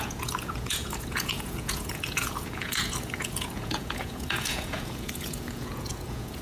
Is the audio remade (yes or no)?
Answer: yes